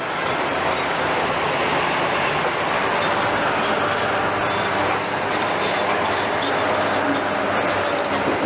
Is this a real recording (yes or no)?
yes